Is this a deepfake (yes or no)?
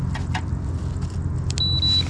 no